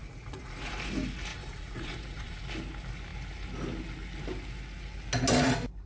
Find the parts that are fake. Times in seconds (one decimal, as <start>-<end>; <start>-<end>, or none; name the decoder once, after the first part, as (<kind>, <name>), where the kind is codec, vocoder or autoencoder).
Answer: 0.0-0.7 (vocoder, Vocos); 1.3-2.4